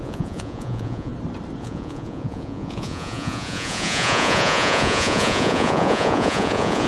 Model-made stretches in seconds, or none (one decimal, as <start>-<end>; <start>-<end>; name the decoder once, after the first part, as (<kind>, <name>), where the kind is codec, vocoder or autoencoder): 0.0-1.1 (vocoder, Vocos); 1.6-6.9

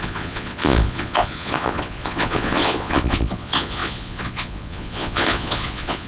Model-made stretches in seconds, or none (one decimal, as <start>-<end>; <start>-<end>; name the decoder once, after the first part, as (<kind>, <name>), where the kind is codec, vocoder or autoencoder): 0.0-6.1 (vocoder, Vocos)

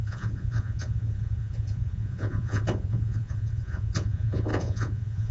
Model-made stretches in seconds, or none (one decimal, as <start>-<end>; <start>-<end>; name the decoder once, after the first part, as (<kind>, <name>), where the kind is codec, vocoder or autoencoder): 0.0-5.3 (vocoder, Vocos)

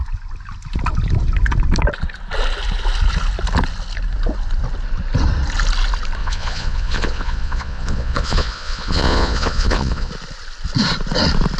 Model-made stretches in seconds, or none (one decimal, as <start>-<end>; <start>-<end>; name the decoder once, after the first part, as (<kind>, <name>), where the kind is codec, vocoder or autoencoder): 6.2-10.1 (vocoder, Vocos)

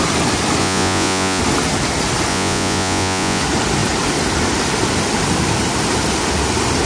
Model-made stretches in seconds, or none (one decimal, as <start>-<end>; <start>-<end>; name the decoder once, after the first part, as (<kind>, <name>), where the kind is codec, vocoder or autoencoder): 0.6-1.4 (vocoder, Vocos); 2.3-3.4